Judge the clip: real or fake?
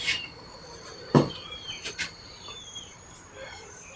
fake